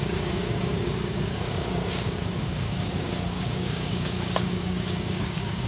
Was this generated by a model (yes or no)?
yes